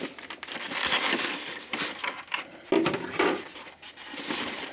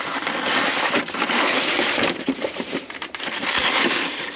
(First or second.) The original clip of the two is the first